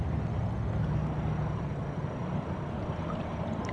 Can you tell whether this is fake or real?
real